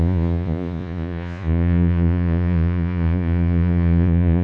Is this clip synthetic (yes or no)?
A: yes